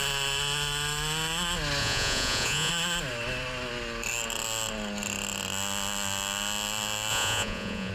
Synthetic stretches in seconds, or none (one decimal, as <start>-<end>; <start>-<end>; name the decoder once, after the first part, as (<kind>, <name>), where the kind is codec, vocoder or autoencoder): 1.8-2.7 (vocoder, Vocos); 7.1-7.9